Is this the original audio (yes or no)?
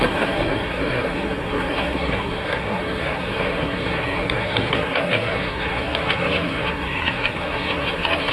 no